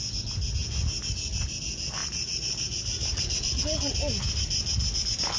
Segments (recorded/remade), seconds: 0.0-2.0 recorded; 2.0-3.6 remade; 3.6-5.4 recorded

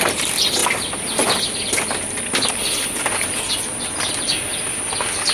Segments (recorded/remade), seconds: 0.0-5.3 recorded